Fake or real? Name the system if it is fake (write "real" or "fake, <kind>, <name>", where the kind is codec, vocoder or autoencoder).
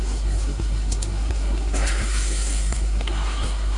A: fake, codec, SNAC